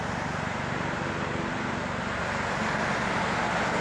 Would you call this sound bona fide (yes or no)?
yes